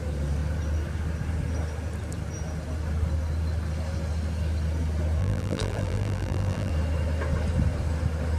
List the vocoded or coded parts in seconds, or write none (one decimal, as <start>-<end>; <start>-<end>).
5.2-6.7